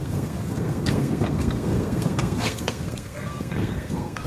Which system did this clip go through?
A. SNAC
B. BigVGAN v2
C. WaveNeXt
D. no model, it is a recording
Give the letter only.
A